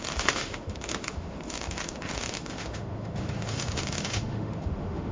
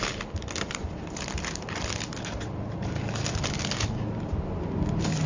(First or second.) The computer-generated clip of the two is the first